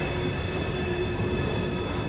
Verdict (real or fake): real